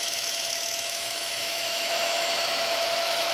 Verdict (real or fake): fake